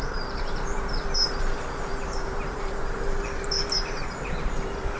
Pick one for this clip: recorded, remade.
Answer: remade